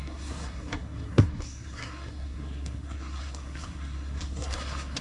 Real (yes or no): no